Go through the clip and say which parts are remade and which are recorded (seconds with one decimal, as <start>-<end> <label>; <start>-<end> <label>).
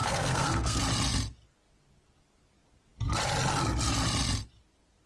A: 0.0-0.8 remade; 0.8-5.1 recorded